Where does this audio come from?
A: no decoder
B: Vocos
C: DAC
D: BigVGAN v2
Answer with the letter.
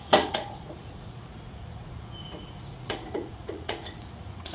B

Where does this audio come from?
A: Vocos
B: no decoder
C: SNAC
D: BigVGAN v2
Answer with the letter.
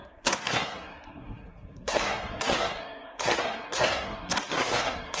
C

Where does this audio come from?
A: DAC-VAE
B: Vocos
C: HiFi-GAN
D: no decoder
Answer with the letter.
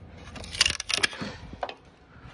D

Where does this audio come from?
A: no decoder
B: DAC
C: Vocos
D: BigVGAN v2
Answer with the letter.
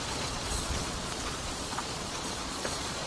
C